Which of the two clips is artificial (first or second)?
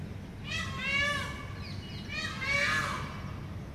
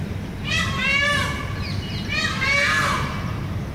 second